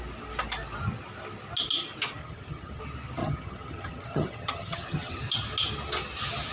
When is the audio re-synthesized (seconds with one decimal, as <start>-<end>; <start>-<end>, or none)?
2.2-2.8; 3.2-5.2